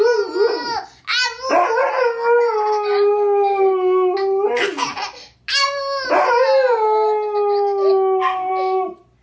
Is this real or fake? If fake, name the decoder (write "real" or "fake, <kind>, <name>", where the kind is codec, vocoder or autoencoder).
real